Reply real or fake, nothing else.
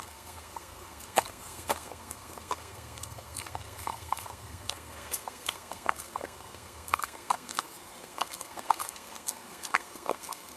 fake